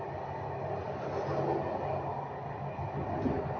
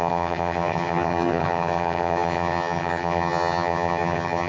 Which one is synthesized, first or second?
second